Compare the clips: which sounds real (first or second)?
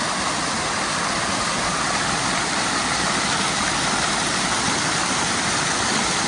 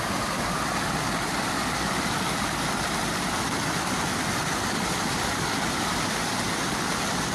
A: second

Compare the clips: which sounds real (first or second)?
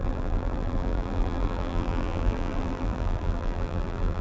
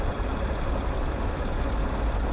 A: second